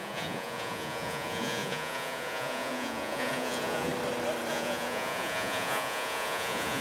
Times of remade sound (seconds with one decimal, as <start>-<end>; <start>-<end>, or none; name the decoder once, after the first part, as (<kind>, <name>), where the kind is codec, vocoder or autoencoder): 0.0-3.9 (vocoder, Vocos); 4.5-6.8